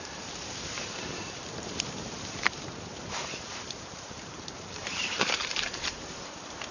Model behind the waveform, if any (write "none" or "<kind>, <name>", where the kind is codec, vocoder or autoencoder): vocoder, BigVGAN v2